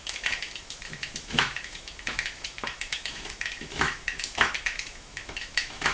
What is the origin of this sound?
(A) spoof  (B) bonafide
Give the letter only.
A